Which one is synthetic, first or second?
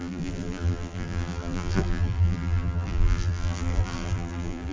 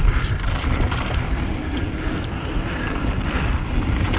first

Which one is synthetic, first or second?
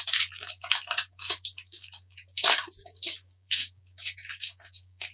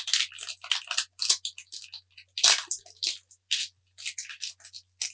first